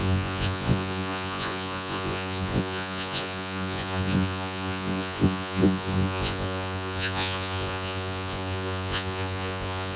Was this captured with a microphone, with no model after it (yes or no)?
no